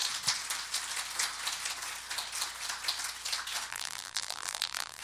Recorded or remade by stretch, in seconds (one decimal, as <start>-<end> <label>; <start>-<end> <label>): 0.0-3.7 recorded; 3.7-5.0 remade